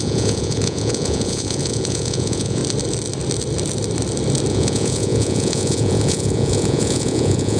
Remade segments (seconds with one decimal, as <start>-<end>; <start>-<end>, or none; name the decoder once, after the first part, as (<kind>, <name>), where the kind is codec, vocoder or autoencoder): 0.0-2.6 (vocoder, Vocos); 4.5-7.6